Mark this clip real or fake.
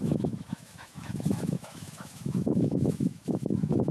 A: fake